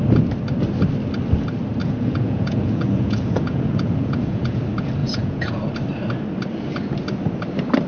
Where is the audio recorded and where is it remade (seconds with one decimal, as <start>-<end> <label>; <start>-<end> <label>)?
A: 0.0-1.8 recorded; 1.8-4.6 remade; 4.6-5.0 recorded; 5.0-5.6 remade; 5.6-7.9 recorded